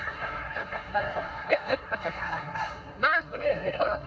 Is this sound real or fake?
fake